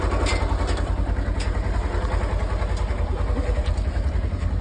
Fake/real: real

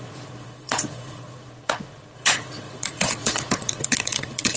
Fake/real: fake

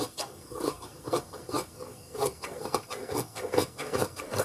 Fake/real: fake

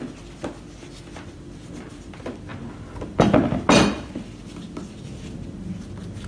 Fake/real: real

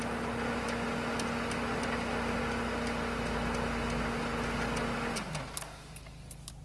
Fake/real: real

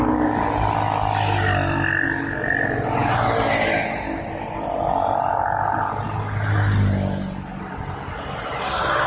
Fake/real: real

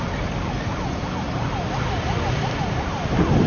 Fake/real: real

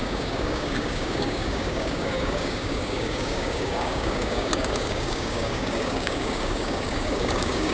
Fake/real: fake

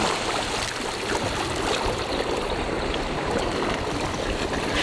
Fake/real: real